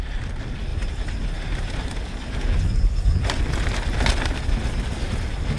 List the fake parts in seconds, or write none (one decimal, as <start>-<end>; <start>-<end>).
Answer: none